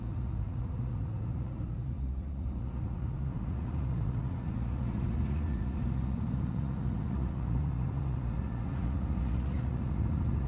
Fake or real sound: fake